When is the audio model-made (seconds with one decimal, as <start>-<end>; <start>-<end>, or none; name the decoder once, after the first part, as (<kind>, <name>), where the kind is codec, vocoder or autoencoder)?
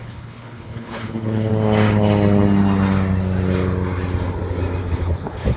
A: 0.0-1.5 (codec, HILCodec); 4.8-5.6